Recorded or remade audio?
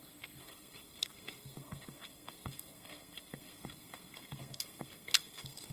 remade